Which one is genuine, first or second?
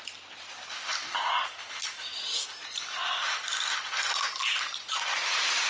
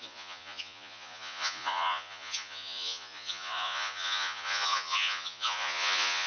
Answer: first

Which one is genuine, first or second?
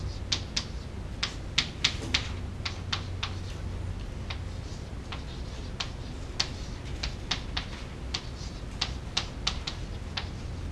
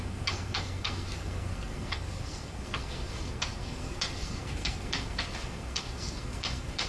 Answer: first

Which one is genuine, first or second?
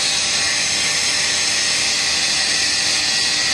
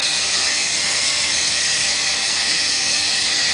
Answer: first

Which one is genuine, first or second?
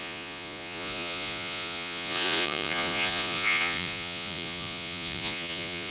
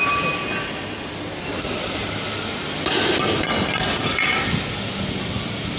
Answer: second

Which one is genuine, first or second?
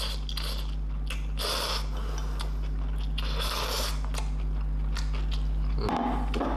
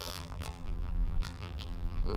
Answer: first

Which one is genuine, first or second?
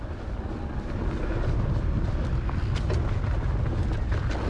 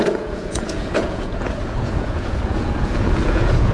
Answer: first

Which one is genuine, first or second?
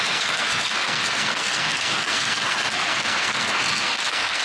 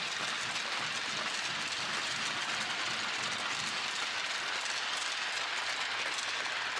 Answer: second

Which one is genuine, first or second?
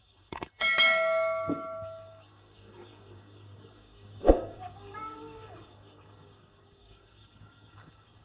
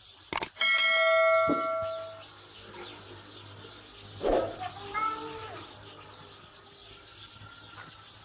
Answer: second